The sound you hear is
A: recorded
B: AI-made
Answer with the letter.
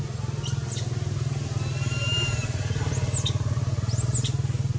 A